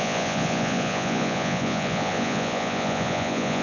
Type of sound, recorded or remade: remade